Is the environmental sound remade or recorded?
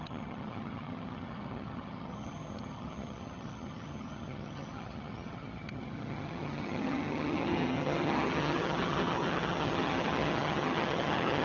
remade